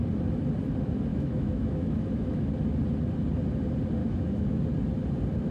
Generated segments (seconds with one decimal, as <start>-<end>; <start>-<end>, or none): 1.1-2.5; 4.0-4.6